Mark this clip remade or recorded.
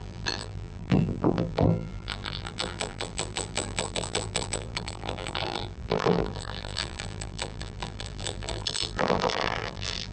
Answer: remade